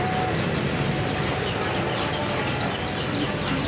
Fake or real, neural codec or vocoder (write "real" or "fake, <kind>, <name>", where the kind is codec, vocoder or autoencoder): real